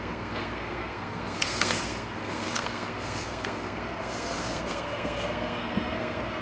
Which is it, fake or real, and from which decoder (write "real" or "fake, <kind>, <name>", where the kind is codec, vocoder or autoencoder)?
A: fake, codec, SNAC